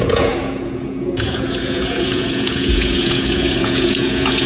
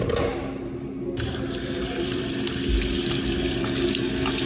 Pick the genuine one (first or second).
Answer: second